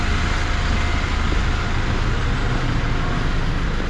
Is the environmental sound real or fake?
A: real